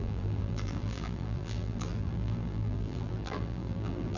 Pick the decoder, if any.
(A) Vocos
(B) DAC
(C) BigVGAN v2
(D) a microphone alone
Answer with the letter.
C